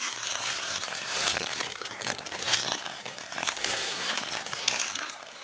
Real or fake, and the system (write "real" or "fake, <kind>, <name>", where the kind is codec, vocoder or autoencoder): fake, codec, SNAC